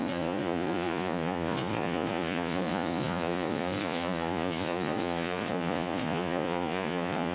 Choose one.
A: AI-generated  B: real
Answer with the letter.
A